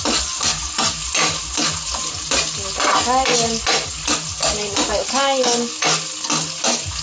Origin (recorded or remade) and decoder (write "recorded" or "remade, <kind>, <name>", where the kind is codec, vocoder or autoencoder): recorded